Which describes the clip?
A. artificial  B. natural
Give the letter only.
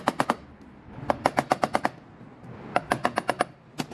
B